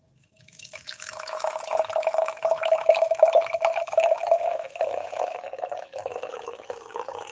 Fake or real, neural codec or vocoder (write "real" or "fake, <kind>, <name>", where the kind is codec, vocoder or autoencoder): fake, autoencoder, DAC-VAE